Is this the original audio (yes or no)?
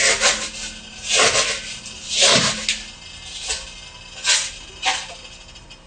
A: yes